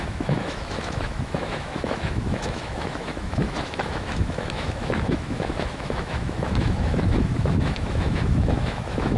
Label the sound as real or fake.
fake